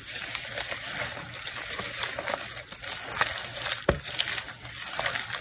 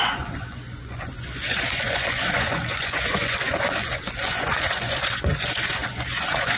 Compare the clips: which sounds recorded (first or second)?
first